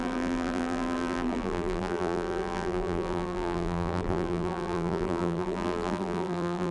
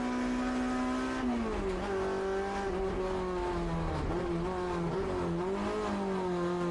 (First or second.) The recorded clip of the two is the second